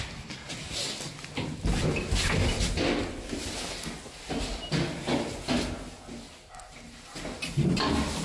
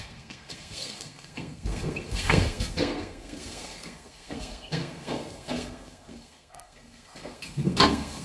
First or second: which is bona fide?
first